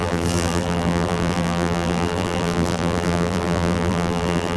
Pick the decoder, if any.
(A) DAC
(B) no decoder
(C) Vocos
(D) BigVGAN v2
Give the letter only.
D